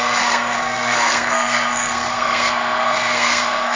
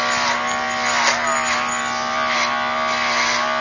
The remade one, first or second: first